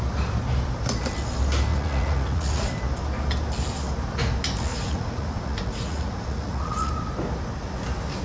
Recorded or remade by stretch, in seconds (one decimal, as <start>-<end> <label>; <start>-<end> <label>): 0.0-1.7 recorded; 1.7-2.7 remade; 2.7-4.7 recorded; 4.7-6.9 remade; 6.9-8.2 recorded